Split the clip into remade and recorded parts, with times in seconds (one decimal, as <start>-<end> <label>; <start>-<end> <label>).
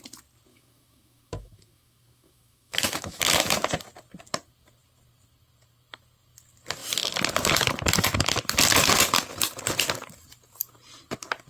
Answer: 0.0-0.5 recorded; 0.5-3.2 remade; 3.2-11.5 recorded